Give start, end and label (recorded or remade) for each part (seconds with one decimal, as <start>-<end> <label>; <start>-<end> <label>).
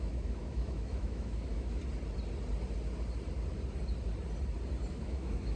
0.0-1.8 remade; 1.8-4.9 recorded; 4.9-5.6 remade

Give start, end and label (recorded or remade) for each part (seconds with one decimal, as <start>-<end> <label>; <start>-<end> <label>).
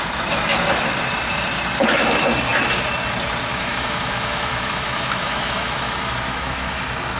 0.0-3.5 recorded; 3.5-6.8 remade; 6.8-7.2 recorded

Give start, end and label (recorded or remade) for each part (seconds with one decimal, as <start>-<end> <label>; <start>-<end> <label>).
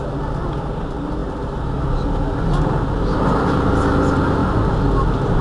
0.0-5.4 recorded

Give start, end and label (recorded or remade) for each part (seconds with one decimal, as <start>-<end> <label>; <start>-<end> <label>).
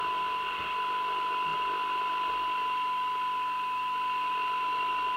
0.0-5.2 recorded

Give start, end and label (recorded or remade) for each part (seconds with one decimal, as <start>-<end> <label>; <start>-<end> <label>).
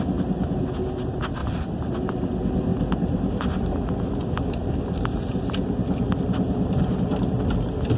0.0-8.0 recorded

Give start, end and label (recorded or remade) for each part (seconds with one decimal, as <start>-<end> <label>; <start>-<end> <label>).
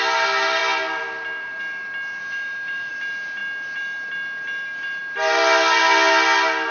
0.0-2.2 recorded; 2.2-2.9 remade; 2.9-6.7 recorded